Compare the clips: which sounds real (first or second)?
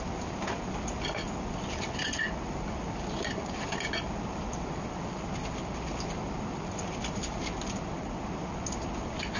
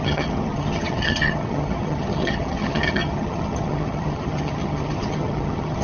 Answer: first